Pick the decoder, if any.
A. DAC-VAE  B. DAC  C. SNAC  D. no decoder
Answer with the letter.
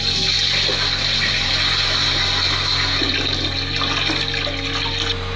D